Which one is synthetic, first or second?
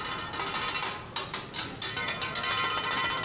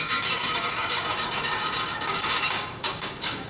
second